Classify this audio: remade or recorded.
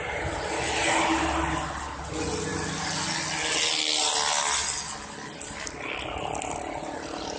recorded